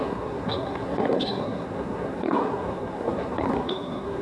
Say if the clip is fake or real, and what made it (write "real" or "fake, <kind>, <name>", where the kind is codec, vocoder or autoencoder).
fake, codec, SNAC